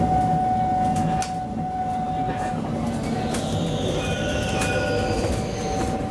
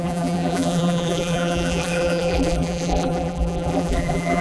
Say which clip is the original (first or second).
first